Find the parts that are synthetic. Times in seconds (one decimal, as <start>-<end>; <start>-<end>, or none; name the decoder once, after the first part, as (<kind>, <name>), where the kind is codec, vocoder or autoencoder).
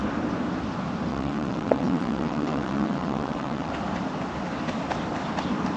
1.1-3.7 (vocoder, WaveNeXt)